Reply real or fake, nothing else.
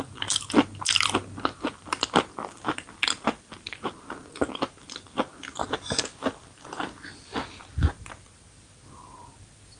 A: real